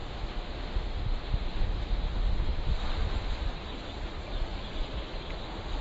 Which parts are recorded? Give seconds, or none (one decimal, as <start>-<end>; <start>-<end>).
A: 2.7-5.8